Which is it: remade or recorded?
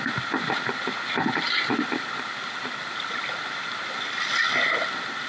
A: recorded